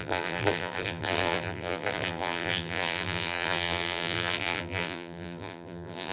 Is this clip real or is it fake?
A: fake